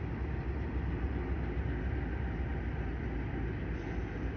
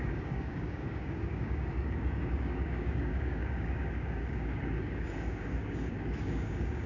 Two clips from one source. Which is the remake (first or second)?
second